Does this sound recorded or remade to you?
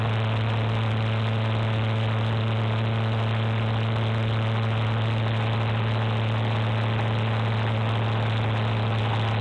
recorded